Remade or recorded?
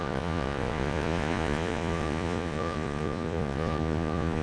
remade